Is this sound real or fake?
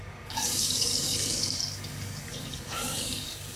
fake